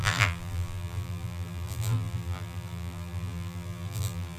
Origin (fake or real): fake